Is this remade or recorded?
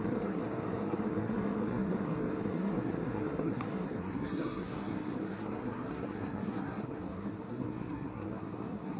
remade